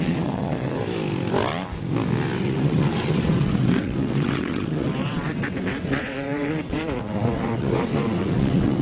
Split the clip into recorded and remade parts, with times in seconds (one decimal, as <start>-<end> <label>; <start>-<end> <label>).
0.0-0.8 remade; 0.8-2.4 recorded; 2.4-8.8 remade